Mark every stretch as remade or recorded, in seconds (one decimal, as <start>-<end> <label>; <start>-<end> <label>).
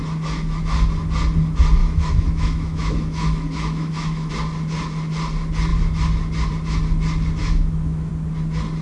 0.0-1.8 recorded; 1.8-4.3 remade; 4.3-7.4 recorded; 7.4-8.1 remade; 8.1-8.8 recorded